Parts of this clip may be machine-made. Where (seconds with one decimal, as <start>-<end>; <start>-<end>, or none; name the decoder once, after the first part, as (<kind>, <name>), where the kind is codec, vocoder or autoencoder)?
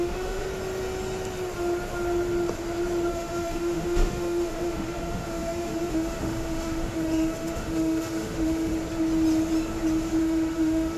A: 0.0-0.5 (autoencoder, DAC-VAE); 3.1-8.7; 10.2-11.0